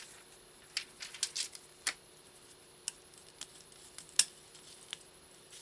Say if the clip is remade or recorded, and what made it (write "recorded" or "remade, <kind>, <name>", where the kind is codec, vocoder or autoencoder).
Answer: recorded